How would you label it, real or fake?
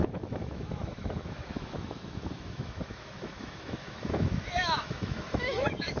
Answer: fake